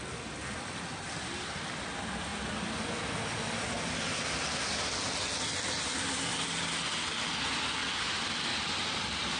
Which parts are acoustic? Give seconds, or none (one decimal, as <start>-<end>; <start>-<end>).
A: 0.0-9.4